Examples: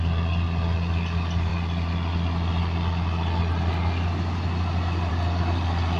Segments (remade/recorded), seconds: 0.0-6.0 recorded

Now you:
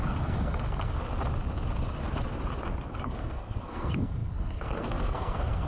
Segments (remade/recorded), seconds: 0.0-1.0 remade; 1.0-2.9 recorded; 2.9-5.7 remade

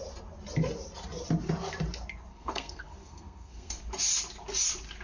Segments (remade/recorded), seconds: 0.0-2.3 recorded; 2.3-3.8 remade; 3.8-5.0 recorded

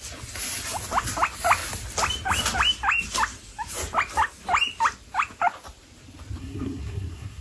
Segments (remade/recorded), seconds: 0.0-6.4 recorded; 6.4-7.4 remade

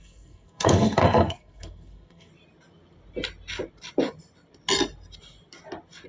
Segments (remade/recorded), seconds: 0.0-2.3 remade; 2.3-6.1 recorded

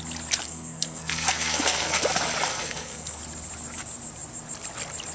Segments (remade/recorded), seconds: 0.0-0.4 recorded; 0.4-2.0 remade; 2.0-2.5 recorded; 2.5-3.2 remade; 3.2-5.1 recorded

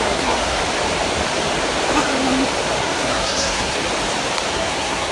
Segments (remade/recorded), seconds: 0.0-0.6 remade; 0.6-2.8 recorded; 2.8-3.8 remade; 3.8-4.5 recorded; 4.5-5.1 remade

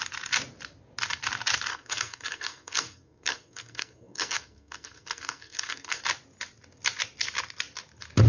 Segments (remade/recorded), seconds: 0.0-1.7 recorded; 1.7-6.0 remade; 6.0-8.3 recorded